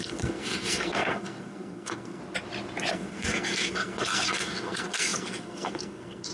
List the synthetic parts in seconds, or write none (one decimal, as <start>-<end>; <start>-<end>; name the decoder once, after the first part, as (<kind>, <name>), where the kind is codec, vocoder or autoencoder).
0.0-2.2 (codec, SNAC); 2.9-6.3